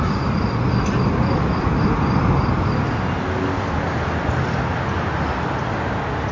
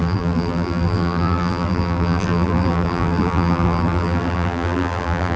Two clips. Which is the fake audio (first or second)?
second